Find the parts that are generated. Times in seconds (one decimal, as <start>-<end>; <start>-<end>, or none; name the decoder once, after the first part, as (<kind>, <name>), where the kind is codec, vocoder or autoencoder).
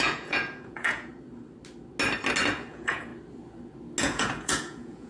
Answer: 0.0-1.1 (vocoder, Vocos); 2.7-3.1; 4.0-5.1